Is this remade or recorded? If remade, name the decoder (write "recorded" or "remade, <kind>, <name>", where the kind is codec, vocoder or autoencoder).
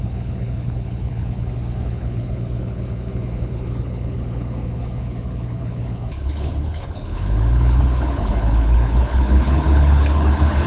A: remade, codec, HILCodec